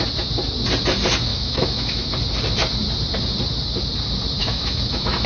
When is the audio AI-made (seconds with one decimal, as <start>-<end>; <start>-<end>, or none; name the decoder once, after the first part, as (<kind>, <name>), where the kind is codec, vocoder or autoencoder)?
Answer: 1.3-2.1 (autoencoder, DAC-VAE); 4.4-5.3